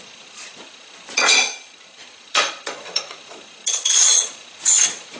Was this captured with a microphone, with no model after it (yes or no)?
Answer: no